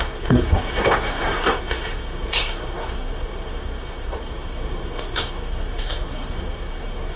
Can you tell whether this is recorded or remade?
remade